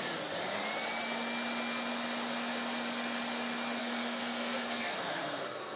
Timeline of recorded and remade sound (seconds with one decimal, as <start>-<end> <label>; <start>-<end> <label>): 0.0-3.8 recorded; 3.8-5.8 remade